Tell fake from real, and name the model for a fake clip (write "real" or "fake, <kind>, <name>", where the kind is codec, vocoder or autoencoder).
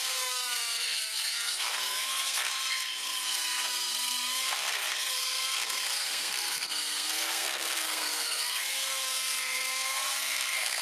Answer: fake, codec, SNAC